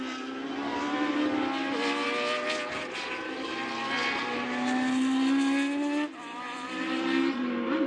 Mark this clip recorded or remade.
recorded